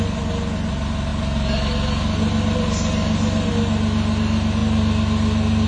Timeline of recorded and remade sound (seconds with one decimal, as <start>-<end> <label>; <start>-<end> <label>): 0.0-5.7 recorded